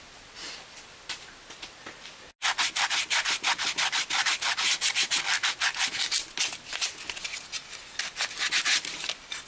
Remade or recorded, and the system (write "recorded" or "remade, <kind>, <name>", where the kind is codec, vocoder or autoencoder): recorded